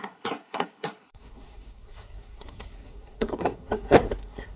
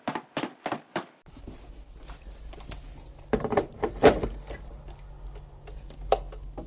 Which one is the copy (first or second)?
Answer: first